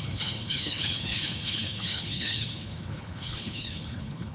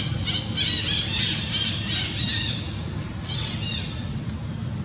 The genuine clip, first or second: second